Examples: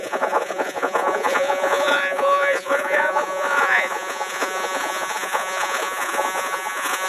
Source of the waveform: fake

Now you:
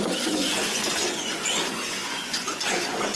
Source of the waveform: fake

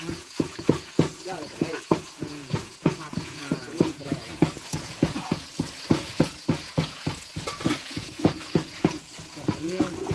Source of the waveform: fake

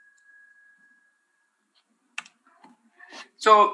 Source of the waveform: real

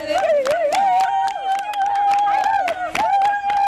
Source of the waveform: real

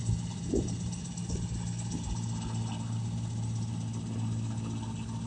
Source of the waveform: real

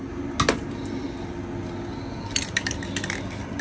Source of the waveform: real